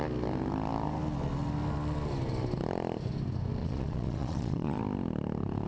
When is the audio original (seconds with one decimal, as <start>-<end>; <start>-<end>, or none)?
0.0-3.6; 4.8-5.7